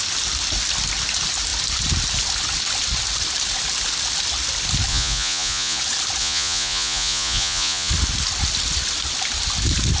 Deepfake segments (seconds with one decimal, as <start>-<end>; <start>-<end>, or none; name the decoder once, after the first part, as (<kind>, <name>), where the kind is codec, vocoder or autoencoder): 4.9-5.8 (vocoder, Vocos); 6.2-7.9